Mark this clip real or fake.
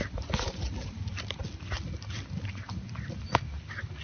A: real